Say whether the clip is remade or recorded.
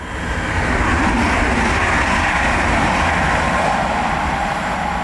recorded